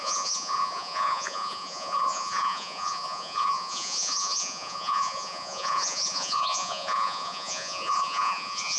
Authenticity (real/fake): fake